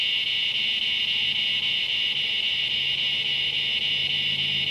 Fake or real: real